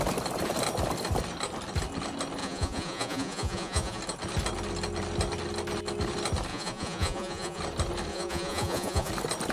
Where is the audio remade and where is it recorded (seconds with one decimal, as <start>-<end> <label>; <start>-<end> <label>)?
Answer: 0.0-2.4 recorded; 2.4-4.0 remade; 4.0-6.5 recorded; 6.5-7.6 remade; 7.6-8.1 recorded; 8.1-9.1 remade; 9.1-9.5 recorded